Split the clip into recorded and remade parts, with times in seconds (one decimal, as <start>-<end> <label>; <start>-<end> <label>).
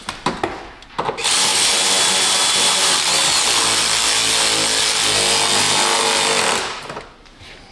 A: 0.0-7.7 recorded